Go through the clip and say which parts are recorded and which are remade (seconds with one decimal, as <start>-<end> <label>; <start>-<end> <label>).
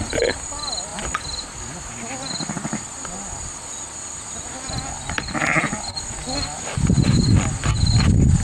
0.0-8.4 recorded